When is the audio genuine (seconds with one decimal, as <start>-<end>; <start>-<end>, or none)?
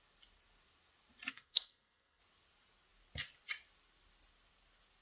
0.0-1.3; 2.2-5.0